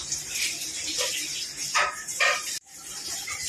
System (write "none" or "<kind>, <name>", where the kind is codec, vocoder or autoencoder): vocoder, BigVGAN v2